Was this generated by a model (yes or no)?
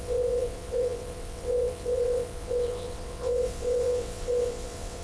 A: yes